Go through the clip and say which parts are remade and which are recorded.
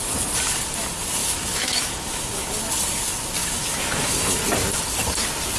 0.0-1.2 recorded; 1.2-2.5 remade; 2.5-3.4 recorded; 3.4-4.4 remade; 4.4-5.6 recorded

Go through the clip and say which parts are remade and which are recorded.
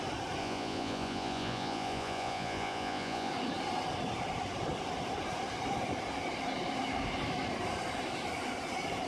0.0-0.4 recorded; 0.4-3.3 remade; 3.3-9.1 recorded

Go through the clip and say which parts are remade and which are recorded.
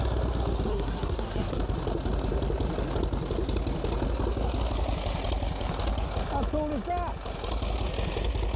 0.0-0.7 recorded; 0.7-1.6 remade; 1.6-8.6 recorded